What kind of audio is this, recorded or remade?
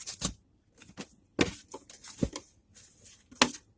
recorded